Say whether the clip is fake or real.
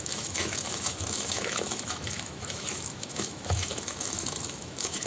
fake